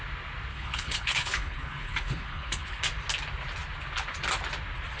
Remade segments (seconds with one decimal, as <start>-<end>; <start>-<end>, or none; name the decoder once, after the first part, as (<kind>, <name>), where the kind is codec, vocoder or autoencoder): 0.5-2.8 (codec, HILCodec)